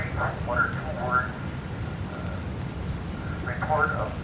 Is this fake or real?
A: fake